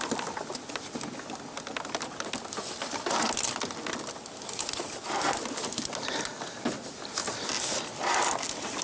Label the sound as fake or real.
real